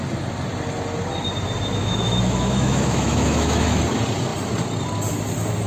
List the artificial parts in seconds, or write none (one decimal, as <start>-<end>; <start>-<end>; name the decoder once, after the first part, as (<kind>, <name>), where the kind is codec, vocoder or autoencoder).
1.8-3.8 (autoencoder, DAC-VAE)